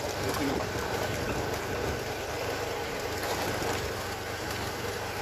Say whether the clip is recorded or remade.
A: remade